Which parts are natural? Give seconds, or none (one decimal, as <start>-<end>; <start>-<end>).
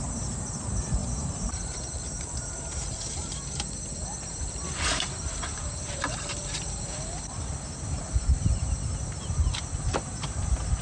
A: none